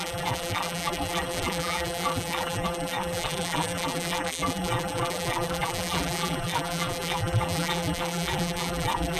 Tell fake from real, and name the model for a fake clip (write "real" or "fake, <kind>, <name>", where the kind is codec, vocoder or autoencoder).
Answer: fake, vocoder, BigVGAN v2